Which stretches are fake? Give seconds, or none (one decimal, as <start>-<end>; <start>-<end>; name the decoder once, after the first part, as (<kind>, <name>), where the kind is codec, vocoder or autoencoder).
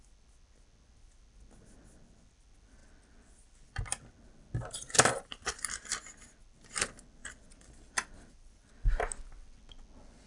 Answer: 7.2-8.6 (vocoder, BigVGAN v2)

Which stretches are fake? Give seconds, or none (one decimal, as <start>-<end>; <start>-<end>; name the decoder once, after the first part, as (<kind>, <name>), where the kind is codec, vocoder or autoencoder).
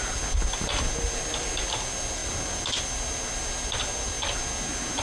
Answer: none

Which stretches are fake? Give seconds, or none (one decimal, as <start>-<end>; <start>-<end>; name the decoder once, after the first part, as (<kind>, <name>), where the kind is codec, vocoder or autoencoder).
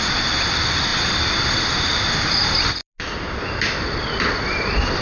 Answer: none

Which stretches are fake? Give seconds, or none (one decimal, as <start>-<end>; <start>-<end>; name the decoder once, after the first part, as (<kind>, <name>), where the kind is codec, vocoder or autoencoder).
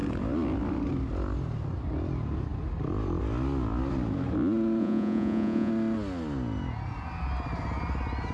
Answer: 4.8-5.7 (vocoder, Vocos)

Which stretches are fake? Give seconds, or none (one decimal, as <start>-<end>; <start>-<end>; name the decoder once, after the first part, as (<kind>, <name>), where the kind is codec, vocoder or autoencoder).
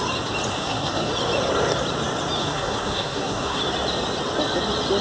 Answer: 0.5-1.1 (codec, SNAC); 2.4-3.6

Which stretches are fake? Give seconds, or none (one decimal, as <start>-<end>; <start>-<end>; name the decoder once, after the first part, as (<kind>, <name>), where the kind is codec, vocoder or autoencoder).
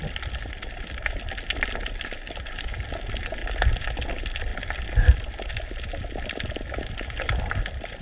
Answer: none